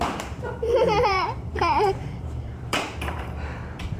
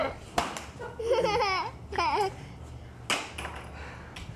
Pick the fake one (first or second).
first